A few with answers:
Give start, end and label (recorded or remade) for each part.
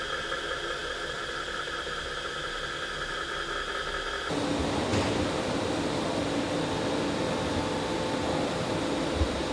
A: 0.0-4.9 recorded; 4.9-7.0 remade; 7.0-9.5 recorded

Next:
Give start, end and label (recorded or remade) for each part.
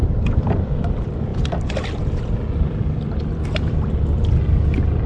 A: 0.0-1.3 recorded; 1.3-4.4 remade; 4.4-5.1 recorded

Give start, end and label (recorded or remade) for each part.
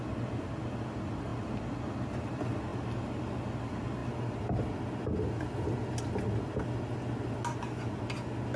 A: 0.0-8.6 recorded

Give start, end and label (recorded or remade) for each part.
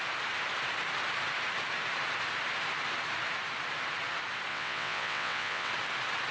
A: 0.0-4.5 recorded; 4.5-5.7 remade; 5.7-6.3 recorded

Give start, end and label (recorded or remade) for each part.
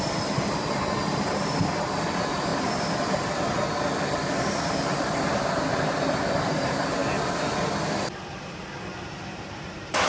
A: 0.0-2.5 remade; 2.5-4.9 recorded; 4.9-7.0 remade; 7.0-8.3 recorded; 8.3-10.1 remade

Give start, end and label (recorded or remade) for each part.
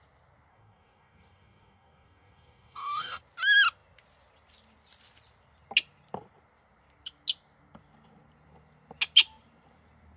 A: 0.0-0.5 recorded; 0.5-3.2 remade; 3.2-10.2 recorded